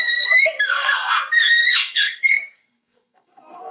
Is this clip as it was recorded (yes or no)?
no